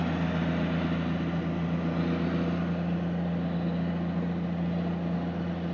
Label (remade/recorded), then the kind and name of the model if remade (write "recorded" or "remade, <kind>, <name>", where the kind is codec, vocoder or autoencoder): recorded